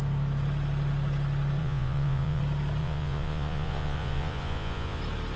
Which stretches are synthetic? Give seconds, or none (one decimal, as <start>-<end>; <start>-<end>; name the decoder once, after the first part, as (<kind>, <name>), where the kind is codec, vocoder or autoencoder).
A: 1.6-2.4 (vocoder, Vocos); 2.8-5.0